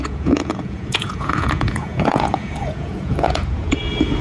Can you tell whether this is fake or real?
fake